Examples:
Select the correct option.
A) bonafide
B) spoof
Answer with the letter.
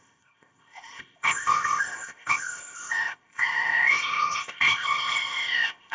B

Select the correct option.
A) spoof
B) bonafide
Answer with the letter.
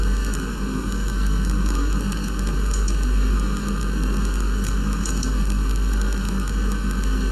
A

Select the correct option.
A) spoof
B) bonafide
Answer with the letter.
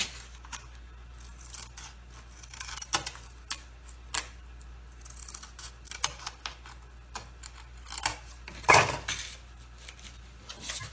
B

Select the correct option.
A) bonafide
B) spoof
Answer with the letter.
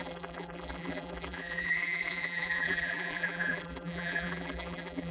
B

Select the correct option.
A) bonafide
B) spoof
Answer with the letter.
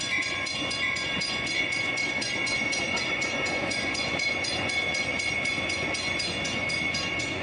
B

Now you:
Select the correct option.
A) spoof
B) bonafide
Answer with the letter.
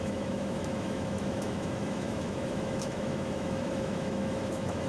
A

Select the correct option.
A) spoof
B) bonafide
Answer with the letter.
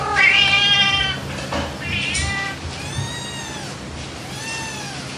B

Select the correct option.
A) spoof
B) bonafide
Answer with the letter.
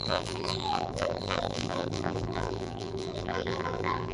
A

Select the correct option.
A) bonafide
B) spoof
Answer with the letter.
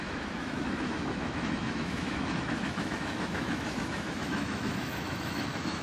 B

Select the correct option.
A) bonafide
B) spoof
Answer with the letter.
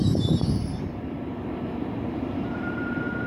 B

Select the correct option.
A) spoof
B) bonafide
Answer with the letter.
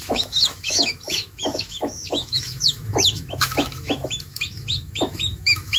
A